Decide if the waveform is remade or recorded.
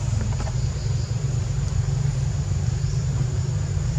remade